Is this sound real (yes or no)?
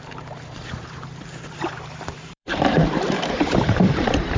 no